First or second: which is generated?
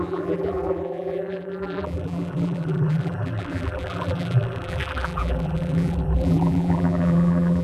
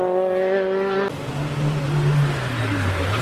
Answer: first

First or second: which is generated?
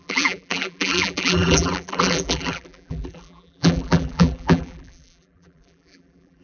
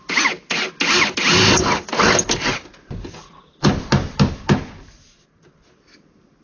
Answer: first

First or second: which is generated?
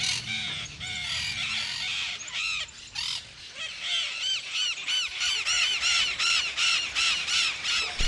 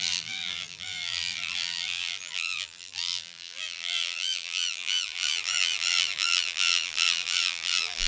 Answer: second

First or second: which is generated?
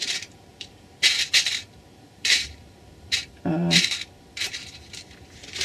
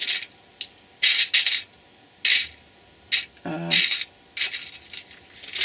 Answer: first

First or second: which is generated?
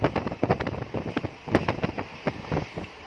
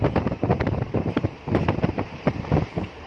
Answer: second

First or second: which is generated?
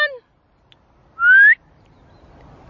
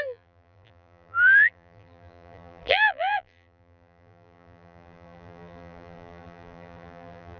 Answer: second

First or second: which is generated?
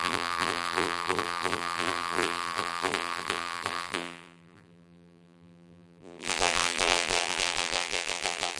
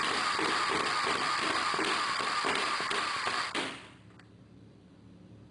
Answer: first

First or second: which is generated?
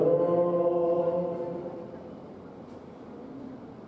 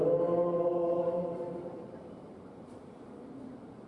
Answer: second